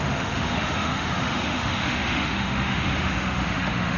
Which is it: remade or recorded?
remade